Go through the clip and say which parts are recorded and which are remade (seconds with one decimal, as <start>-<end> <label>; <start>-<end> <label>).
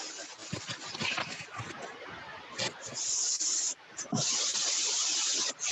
0.0-5.7 recorded